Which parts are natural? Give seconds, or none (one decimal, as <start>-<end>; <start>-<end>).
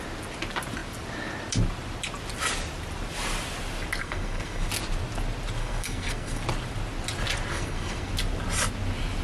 0.0-4.0; 4.7-5.6; 6.4-7.5; 8.1-9.2